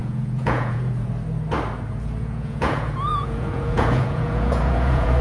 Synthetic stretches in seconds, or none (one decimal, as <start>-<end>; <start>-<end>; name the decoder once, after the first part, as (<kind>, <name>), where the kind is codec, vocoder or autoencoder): 0.0-1.1 (vocoder, Vocos); 1.9-5.2